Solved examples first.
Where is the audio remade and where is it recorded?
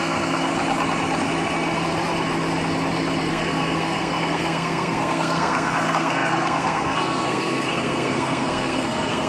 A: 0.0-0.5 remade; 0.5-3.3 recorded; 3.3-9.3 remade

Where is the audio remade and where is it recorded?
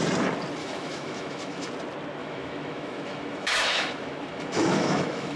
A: 0.0-0.6 recorded; 0.6-1.7 remade; 1.7-2.2 recorded; 2.2-5.4 remade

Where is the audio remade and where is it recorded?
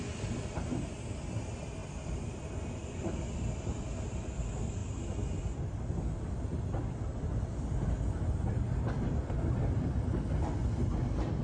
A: 0.0-1.8 recorded; 1.8-3.6 remade; 3.6-7.5 recorded; 7.5-9.6 remade; 9.6-11.4 recorded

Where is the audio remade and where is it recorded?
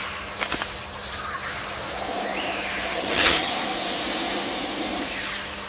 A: 0.0-2.9 recorded; 2.9-3.5 remade; 3.5-5.7 recorded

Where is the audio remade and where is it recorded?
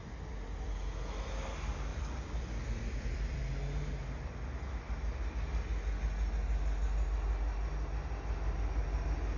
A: 0.0-1.9 recorded; 1.9-3.4 remade; 3.4-9.4 recorded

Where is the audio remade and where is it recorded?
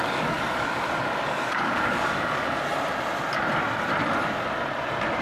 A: 0.0-2.6 remade; 2.6-5.2 recorded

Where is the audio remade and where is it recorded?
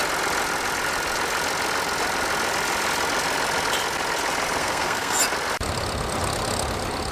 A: 0.0-4.6 recorded; 4.6-5.2 remade; 5.2-7.1 recorded